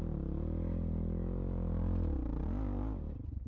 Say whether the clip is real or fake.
real